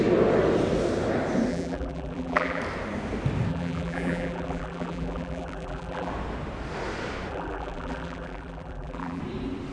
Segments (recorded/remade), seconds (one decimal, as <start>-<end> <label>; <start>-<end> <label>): 0.0-1.5 recorded; 1.5-2.6 remade; 2.6-3.5 recorded; 3.5-6.1 remade; 6.1-7.3 recorded; 7.3-9.2 remade; 9.2-9.7 recorded

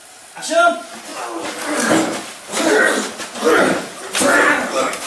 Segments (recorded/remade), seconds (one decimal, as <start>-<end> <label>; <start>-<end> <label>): 0.0-5.1 recorded